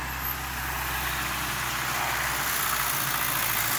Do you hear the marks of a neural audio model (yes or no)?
no